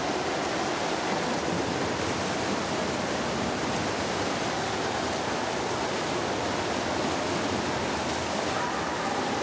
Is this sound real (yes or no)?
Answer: yes